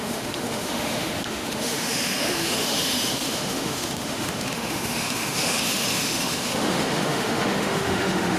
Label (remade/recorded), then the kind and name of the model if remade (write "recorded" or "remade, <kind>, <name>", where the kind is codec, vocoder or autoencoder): remade, autoencoder, DAC-VAE